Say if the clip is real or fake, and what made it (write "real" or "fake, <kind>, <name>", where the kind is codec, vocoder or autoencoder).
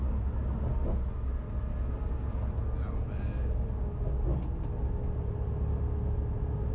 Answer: real